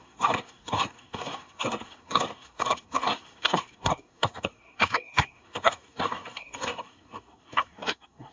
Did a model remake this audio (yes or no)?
yes